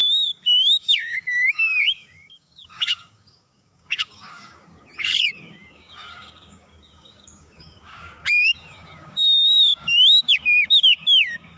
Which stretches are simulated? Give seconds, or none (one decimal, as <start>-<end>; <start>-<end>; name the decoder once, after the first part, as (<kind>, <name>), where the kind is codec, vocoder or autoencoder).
0.0-11.6 (codec, DAC)